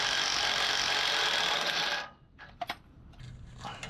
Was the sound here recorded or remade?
recorded